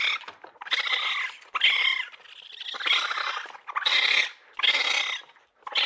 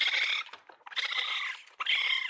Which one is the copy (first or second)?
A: second